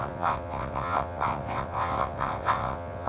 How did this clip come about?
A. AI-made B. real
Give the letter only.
A